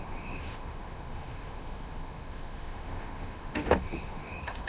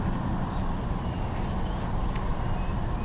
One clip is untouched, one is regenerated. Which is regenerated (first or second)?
first